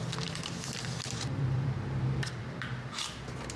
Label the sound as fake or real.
fake